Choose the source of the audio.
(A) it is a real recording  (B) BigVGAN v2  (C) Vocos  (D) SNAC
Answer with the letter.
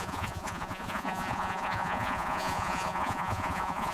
C